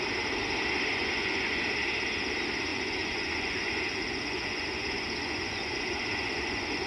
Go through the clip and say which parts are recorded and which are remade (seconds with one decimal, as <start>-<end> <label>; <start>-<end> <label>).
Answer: 0.0-0.9 recorded; 0.9-1.6 remade; 1.6-2.7 recorded; 2.7-6.9 remade